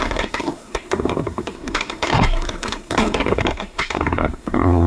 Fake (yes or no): yes